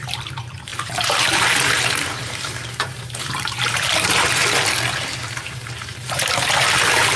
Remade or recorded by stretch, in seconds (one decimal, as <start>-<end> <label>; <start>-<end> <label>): 0.0-4.4 remade; 4.4-5.2 recorded; 5.2-7.2 remade